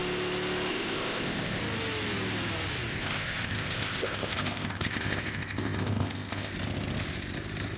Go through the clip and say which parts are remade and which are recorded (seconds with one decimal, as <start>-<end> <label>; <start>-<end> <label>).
0.0-0.7 recorded; 0.7-1.6 remade; 1.6-2.9 recorded; 2.9-6.5 remade; 6.5-7.8 recorded